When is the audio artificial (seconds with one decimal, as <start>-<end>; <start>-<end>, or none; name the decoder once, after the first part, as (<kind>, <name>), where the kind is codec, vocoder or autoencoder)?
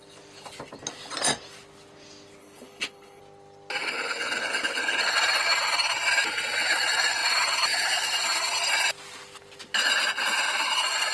2.4-3.2 (codec, HILCodec); 3.8-5.1